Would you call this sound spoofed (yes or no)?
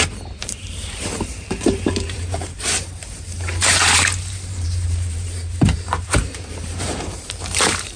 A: yes